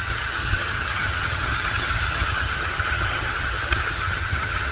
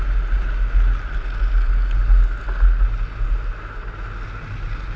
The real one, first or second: second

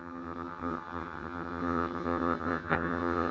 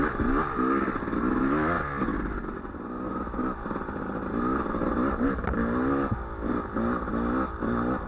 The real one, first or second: second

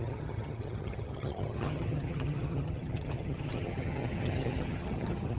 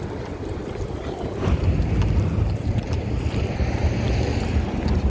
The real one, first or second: second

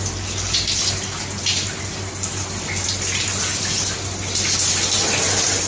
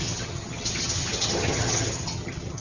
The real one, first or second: first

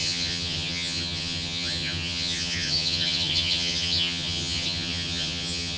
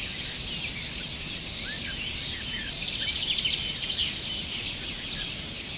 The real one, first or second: second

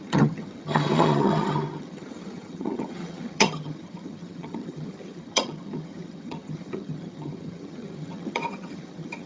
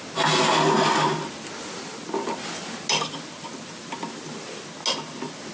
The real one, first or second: second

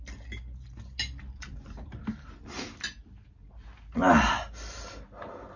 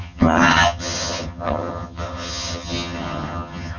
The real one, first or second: first